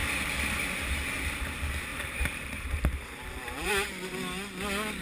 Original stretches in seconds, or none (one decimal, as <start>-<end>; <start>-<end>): 0.0-1.9; 3.7-5.0